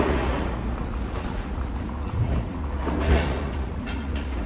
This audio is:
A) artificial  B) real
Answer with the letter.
A